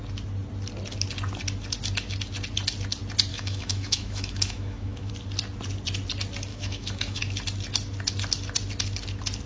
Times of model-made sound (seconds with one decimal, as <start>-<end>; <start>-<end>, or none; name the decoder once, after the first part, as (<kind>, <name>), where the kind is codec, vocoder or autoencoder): 3.3-5.1 (autoencoder, DAC-VAE); 6.5-7.2